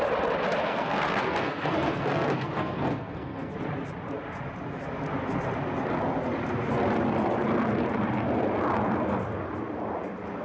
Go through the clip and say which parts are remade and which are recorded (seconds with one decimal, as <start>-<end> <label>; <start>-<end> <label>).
0.0-0.6 recorded; 0.6-3.5 remade; 3.5-10.4 recorded